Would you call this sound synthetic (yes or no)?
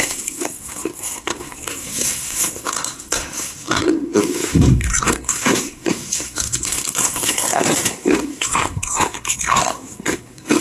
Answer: yes